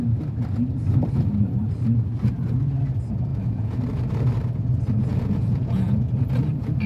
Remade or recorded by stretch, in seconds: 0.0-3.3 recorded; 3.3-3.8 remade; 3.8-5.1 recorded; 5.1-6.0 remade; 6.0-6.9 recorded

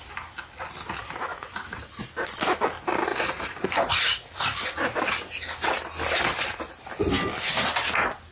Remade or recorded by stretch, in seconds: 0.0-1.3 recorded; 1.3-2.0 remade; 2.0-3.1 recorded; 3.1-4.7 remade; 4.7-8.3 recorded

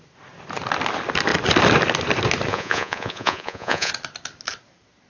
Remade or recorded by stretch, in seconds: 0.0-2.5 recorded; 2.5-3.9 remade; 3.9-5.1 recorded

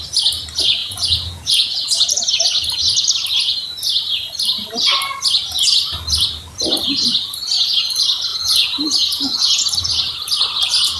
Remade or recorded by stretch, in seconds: 0.0-0.8 recorded; 0.8-2.2 remade; 2.2-8.3 recorded; 8.3-9.9 remade; 9.9-11.0 recorded